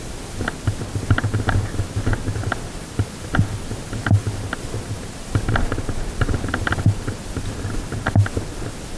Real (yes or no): yes